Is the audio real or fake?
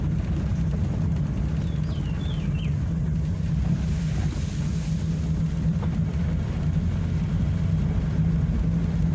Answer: real